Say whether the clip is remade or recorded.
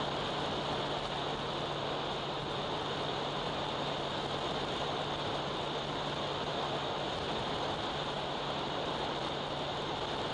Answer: recorded